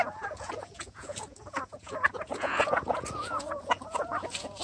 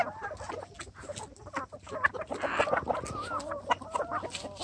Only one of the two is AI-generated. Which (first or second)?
first